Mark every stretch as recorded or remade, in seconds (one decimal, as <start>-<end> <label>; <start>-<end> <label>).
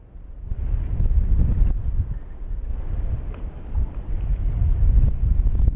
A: 0.0-5.8 recorded